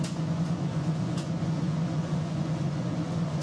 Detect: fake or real fake